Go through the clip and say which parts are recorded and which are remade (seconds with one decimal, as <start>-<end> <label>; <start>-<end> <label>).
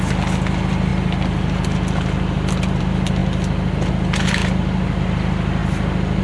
0.0-6.2 recorded